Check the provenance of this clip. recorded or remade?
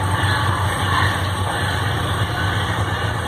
recorded